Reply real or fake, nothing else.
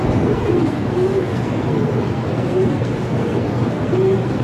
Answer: fake